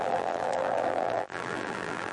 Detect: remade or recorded remade